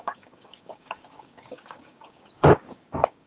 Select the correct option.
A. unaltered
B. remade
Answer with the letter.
B